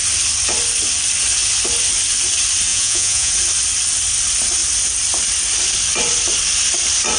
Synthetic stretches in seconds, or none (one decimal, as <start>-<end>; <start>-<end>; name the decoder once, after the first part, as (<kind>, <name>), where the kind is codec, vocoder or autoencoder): 2.7-3.3 (vocoder, Vocos)